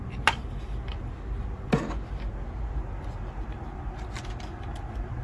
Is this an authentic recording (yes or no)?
yes